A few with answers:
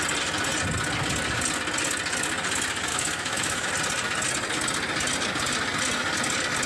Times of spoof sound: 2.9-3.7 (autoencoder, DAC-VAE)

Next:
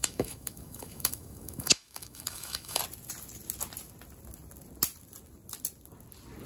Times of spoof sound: 0.0-2.8 (autoencoder, DAC-VAE)